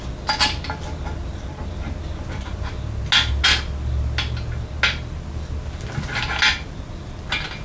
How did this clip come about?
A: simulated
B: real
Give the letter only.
B